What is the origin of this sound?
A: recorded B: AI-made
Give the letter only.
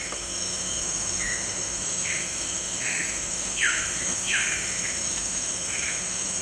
B